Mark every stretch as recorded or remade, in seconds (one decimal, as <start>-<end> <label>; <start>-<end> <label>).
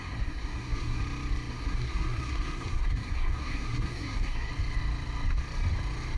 0.0-1.0 remade; 1.0-1.5 recorded; 1.5-4.5 remade; 4.5-6.2 recorded